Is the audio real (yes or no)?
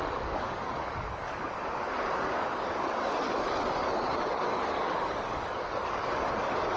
no